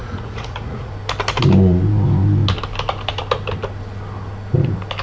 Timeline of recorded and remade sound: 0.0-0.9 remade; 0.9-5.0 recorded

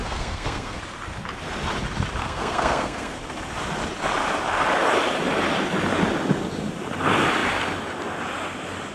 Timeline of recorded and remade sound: 0.0-0.8 remade; 0.8-2.2 recorded; 2.2-3.2 remade; 3.2-8.9 recorded

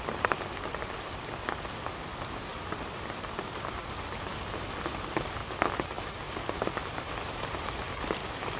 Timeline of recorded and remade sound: 0.0-8.6 recorded